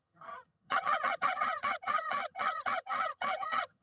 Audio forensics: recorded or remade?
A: remade